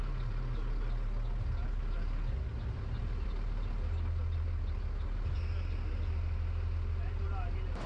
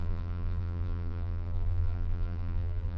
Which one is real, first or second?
first